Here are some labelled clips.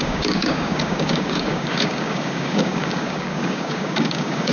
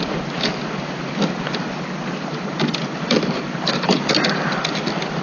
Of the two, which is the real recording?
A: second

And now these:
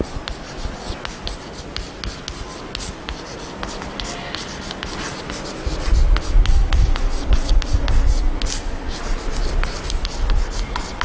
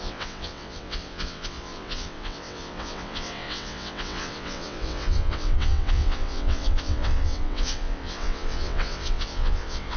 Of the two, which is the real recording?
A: first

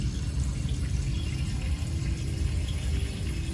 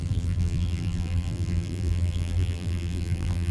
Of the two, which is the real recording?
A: first